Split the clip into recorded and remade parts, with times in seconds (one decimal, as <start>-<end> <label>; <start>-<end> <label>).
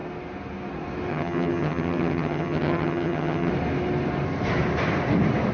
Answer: 0.0-1.1 recorded; 1.1-3.5 remade; 3.5-5.5 recorded